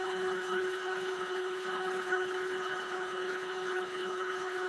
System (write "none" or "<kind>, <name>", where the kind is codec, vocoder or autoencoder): codec, HILCodec